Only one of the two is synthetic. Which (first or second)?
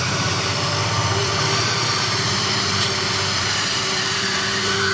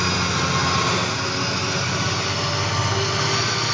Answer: first